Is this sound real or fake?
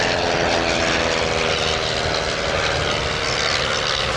real